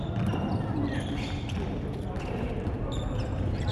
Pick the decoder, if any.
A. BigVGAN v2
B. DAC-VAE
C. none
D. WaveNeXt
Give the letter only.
C